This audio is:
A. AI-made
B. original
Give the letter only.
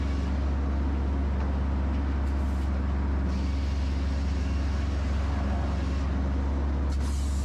B